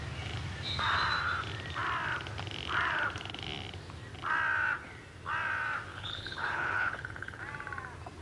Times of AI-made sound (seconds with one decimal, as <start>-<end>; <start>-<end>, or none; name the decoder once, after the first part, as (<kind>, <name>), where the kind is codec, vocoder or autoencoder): 5.9-7.4 (codec, HILCodec)